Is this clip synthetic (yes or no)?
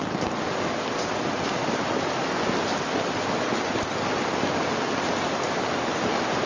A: no